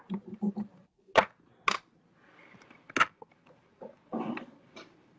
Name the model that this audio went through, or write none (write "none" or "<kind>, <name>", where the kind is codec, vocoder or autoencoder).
none